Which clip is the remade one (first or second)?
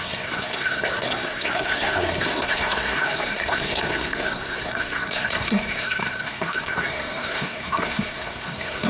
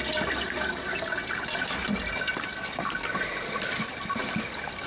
first